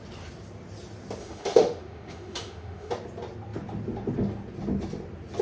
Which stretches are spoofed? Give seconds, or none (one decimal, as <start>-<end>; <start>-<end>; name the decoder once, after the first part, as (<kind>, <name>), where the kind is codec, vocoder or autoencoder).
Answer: 1.2-2.9 (autoencoder, DAC-VAE)